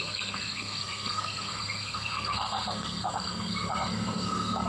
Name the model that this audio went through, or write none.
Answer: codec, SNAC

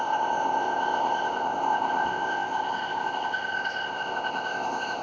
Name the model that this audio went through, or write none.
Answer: codec, ZipCodec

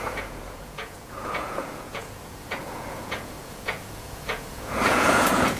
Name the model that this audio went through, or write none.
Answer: vocoder, Vocos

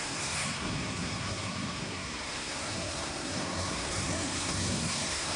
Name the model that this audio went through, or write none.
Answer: codec, SNAC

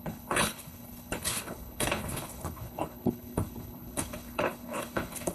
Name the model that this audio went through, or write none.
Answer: codec, HILCodec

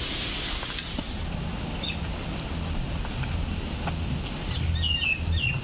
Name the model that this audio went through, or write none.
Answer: none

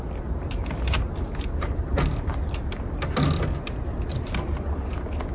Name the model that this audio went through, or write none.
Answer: none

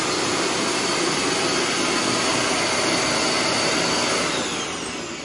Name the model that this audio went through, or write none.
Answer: none